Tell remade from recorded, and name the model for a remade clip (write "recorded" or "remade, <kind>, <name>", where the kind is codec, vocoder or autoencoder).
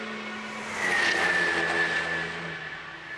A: recorded